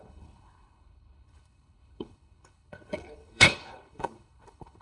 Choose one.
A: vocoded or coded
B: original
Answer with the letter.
A